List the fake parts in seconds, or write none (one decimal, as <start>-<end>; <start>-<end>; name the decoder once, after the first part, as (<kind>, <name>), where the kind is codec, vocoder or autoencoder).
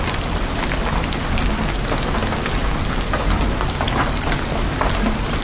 none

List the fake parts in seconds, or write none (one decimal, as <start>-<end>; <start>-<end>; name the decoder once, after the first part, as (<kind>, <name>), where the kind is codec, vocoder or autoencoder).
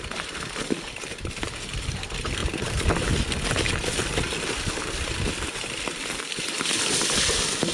none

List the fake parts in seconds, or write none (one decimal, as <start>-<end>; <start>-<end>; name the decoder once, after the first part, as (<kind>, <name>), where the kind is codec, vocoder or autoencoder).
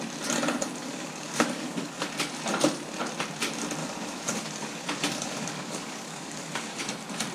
0.8-2.1 (codec, DAC); 3.8-6.8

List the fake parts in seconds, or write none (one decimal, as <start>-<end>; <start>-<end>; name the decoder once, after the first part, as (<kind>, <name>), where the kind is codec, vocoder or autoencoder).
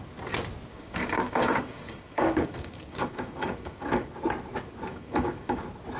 0.7-4.1 (codec, DAC); 4.9-5.6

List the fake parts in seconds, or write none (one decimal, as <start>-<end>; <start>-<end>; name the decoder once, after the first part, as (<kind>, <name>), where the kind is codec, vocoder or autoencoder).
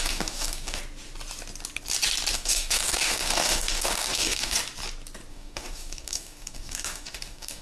0.0-0.8 (codec, DAC); 2.3-4.6; 5.3-7.6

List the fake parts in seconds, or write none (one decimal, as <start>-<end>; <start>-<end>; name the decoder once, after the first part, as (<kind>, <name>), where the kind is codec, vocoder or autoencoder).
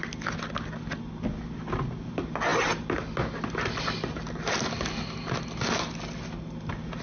none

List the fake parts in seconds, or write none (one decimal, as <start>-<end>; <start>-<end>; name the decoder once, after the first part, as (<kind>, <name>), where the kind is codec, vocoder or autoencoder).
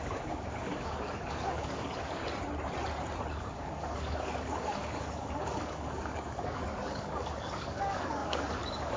0.0-2.2 (codec, DAC); 3.3-9.0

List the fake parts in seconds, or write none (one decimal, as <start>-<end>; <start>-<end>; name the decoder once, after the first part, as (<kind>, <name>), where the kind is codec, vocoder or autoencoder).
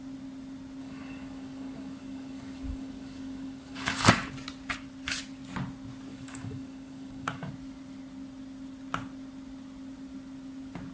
0.8-4.1 (codec, DAC); 6.1-7.5